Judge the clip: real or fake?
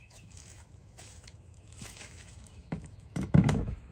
fake